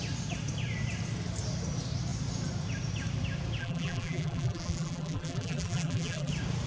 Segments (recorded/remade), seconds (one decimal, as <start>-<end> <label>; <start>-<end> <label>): 0.0-3.6 recorded; 3.6-6.3 remade; 6.3-6.7 recorded